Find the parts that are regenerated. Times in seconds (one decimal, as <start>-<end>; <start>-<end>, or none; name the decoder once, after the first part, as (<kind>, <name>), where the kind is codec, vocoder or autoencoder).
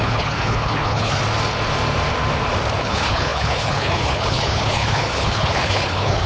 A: 0.0-1.2 (codec, HILCodec); 2.8-6.3